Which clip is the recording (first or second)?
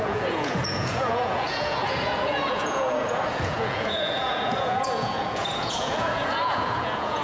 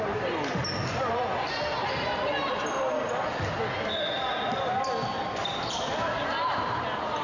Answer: second